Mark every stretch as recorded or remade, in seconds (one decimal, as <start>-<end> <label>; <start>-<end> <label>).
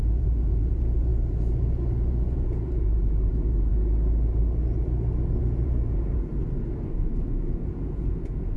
0.0-3.7 remade; 3.7-5.4 recorded; 5.4-6.3 remade; 6.3-6.9 recorded; 6.9-8.6 remade